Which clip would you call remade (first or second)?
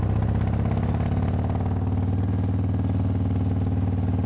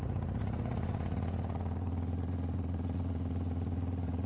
second